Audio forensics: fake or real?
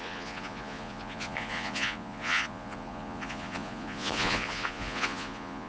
fake